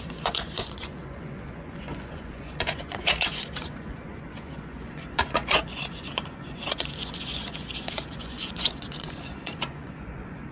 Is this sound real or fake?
fake